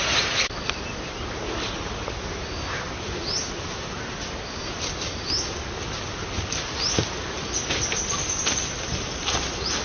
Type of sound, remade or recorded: recorded